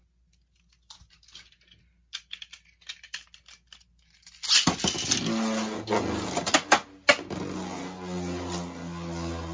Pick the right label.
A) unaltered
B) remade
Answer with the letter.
A